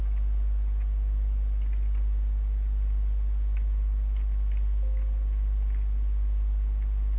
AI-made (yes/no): no